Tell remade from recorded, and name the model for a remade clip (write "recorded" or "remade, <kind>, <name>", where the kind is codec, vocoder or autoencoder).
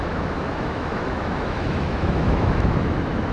remade, autoencoder, DAC-VAE